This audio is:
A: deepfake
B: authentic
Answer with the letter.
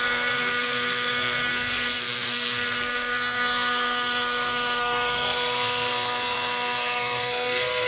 A